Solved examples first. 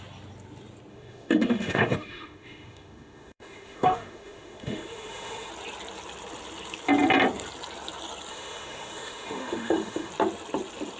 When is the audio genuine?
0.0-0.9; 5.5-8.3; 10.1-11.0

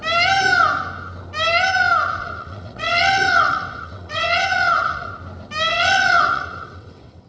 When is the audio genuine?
0.0-2.2; 5.1-5.7

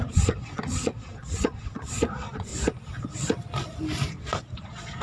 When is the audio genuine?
2.5-4.1

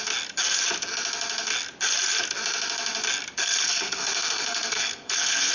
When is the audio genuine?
0.0-3.4

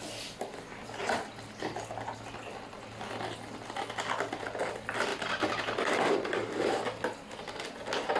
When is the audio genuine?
0.0-8.2